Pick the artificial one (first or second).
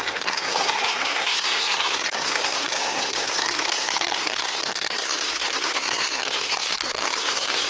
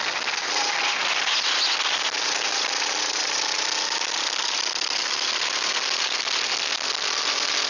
first